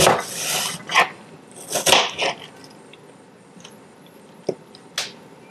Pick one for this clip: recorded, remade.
recorded